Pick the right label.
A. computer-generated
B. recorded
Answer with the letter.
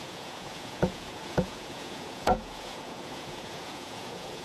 A